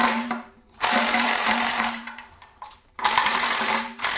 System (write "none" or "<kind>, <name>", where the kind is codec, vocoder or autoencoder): vocoder, BigVGAN v2